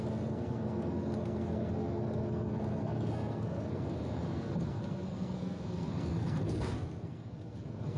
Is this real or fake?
fake